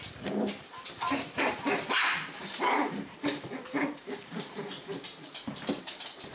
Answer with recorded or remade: remade